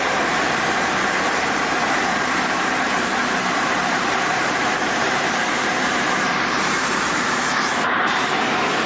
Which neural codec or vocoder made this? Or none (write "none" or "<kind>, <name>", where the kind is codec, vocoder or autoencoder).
vocoder, BigVGAN v2